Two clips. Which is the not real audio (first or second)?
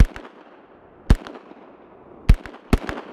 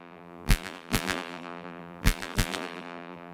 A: second